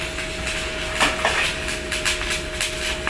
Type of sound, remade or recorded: recorded